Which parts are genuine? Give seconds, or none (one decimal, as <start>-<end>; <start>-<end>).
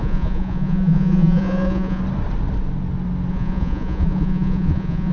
2.0-3.3